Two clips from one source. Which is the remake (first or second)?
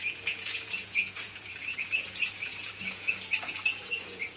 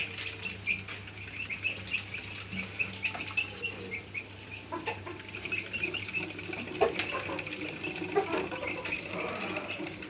first